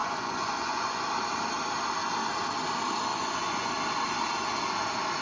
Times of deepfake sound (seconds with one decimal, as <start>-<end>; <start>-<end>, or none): 0.0-1.0; 3.1-3.7